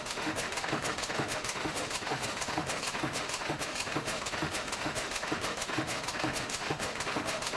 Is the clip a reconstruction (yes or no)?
yes